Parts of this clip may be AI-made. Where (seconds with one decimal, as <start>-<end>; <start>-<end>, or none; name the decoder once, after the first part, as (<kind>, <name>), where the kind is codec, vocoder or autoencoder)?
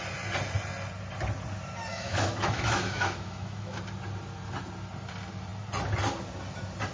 1.9-3.8 (autoencoder, DAC-VAE)